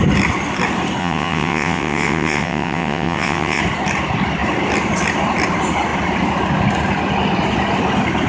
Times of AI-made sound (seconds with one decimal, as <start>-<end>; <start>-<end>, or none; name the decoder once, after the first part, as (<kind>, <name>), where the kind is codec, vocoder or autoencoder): 1.0-3.6 (vocoder, WaveNeXt)